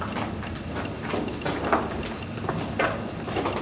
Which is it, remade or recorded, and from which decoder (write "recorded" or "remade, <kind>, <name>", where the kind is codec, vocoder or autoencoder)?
recorded